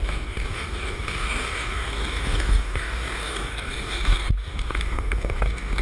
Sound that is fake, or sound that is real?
fake